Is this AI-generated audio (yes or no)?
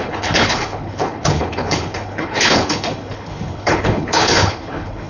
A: yes